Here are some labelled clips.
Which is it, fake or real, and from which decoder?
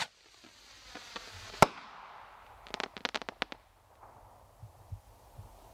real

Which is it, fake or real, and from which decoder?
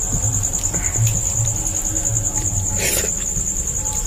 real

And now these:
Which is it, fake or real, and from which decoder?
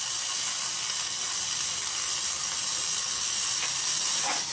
real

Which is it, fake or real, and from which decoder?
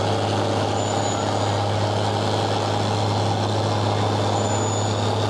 real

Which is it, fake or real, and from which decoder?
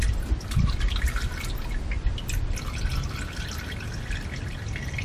real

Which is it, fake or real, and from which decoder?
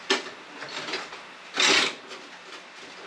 real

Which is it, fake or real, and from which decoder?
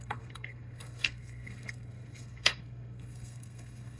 fake, codec, SNAC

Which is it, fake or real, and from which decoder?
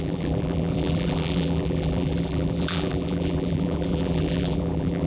fake, vocoder, BigVGAN v2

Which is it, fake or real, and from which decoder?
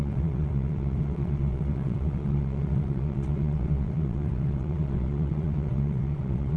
fake, vocoder, WaveNeXt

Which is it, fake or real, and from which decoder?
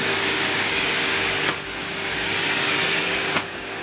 fake, codec, DAC